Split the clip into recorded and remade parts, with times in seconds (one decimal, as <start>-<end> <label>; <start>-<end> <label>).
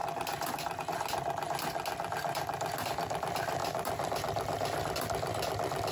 0.0-5.9 recorded